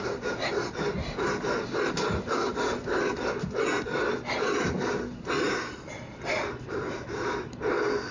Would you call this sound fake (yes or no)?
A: no